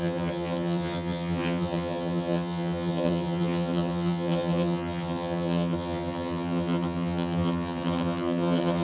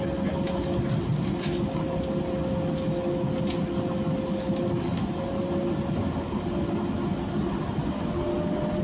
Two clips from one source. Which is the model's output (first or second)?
first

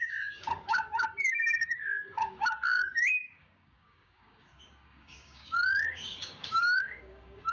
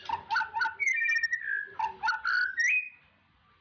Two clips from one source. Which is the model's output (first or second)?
first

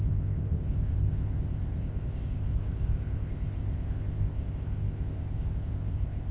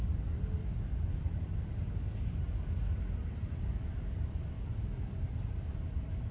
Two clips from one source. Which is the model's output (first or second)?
first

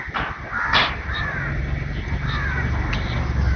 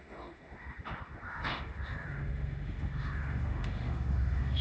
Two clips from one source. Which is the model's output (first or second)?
second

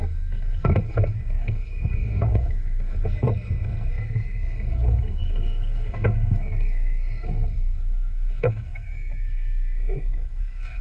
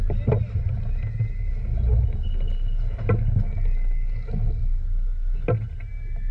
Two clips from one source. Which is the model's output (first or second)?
first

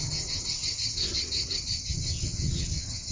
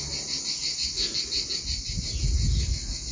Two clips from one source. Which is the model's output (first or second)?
first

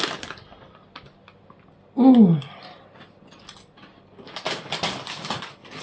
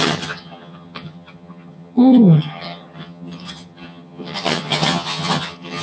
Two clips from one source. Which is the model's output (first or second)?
second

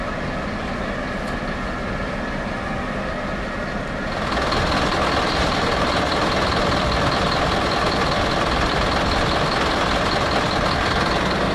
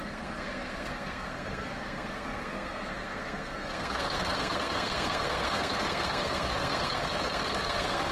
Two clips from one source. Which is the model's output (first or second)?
second